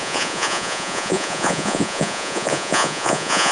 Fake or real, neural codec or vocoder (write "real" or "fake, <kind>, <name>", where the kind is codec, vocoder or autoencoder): fake, vocoder, Vocos